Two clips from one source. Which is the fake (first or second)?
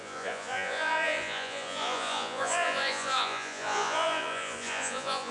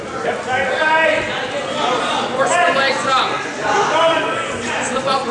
first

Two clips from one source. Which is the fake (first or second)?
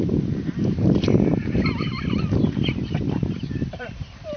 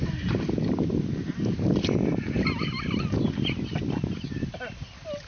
first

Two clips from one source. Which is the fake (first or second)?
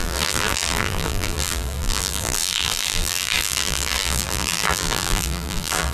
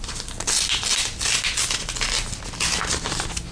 first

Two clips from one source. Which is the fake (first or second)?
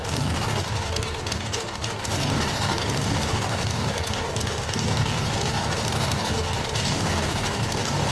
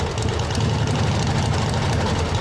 first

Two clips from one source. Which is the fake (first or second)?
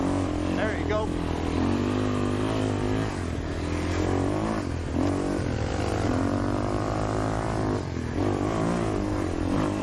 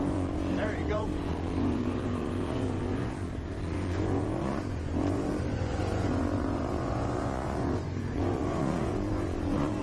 second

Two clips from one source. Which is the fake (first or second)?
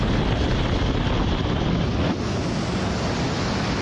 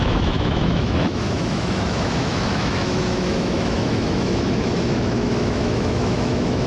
second